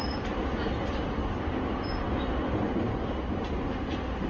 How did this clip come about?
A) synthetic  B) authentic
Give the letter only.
B